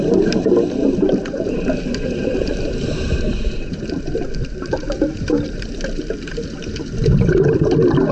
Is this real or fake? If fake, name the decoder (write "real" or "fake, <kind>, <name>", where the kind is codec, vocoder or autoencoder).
fake, vocoder, BigVGAN v2